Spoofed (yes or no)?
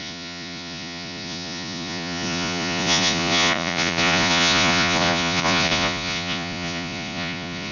yes